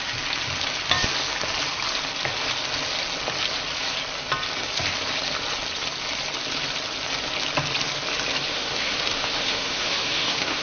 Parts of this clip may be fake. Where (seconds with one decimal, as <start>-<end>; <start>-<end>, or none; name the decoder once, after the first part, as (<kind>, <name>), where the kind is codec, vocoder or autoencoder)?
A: 8.5-10.6 (autoencoder, DAC-VAE)